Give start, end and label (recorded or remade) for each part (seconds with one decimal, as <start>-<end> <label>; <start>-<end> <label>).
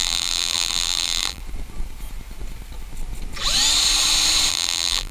0.0-1.4 remade; 1.4-4.5 recorded; 4.5-5.1 remade